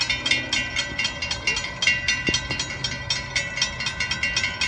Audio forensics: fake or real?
real